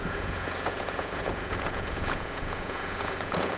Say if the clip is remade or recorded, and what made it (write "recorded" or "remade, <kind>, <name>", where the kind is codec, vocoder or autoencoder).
remade, vocoder, Vocos